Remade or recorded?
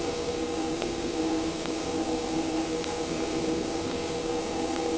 remade